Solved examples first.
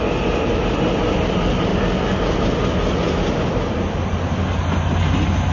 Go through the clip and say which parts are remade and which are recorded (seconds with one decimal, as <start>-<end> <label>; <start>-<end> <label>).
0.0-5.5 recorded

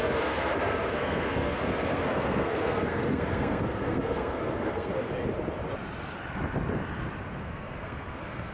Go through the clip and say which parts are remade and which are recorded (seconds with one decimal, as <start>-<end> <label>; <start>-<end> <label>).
0.0-5.1 remade; 5.1-7.4 recorded; 7.4-8.5 remade

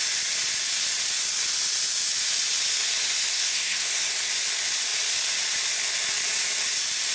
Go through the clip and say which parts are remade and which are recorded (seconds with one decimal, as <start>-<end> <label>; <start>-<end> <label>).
0.0-3.3 recorded; 3.3-4.3 remade; 4.3-7.1 recorded

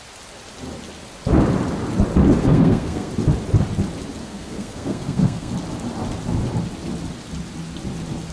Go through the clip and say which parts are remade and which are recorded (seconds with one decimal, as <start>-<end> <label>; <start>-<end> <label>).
0.0-2.4 recorded; 2.4-3.1 remade; 3.1-4.2 recorded; 4.2-5.5 remade; 5.5-8.3 recorded

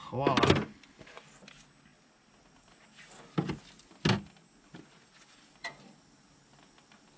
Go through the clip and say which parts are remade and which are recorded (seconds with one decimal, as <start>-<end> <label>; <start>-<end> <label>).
0.0-7.2 recorded

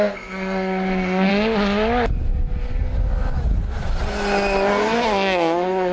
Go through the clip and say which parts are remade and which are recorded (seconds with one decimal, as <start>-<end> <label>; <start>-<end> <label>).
0.0-1.3 remade; 1.3-4.7 recorded; 4.7-5.9 remade